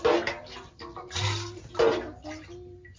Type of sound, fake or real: real